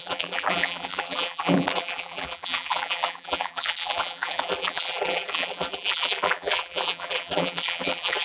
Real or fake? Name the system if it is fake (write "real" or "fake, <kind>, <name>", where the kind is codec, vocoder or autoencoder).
fake, vocoder, BigVGAN v2